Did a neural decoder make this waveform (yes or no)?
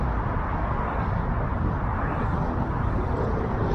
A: no